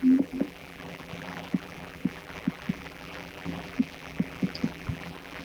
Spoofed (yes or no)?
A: yes